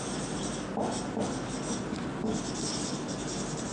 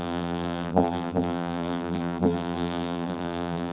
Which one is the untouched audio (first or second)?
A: first